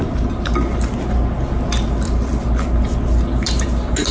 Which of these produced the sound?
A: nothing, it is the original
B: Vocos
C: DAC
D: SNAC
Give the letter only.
A